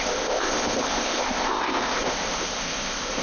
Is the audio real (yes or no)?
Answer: no